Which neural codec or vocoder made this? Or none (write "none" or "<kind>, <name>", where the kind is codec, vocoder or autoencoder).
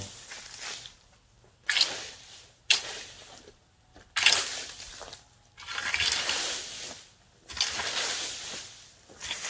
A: none